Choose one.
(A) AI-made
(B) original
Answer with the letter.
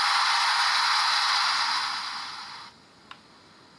B